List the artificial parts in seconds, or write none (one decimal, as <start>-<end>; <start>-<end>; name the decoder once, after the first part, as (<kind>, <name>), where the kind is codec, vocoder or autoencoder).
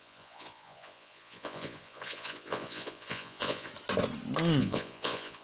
0.0-3.7 (vocoder, Vocos); 4.6-5.4